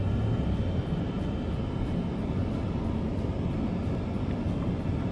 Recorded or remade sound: recorded